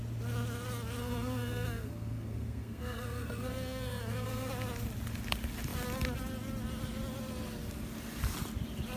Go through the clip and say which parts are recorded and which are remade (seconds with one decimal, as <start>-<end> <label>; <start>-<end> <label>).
0.0-1.0 recorded; 1.0-4.5 remade; 4.5-9.0 recorded